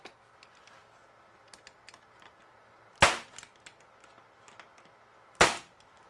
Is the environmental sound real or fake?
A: real